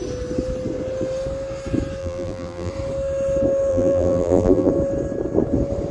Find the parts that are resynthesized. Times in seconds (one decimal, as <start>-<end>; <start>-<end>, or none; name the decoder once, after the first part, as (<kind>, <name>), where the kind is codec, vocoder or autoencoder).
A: 2.0-2.7 (vocoder, BigVGAN v2); 3.7-4.7